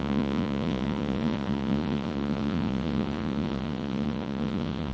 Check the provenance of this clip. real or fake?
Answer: fake